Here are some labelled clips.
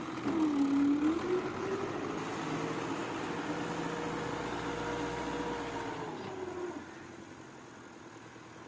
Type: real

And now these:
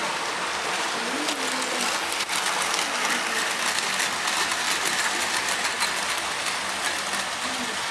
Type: real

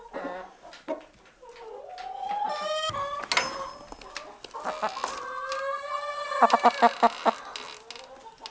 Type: real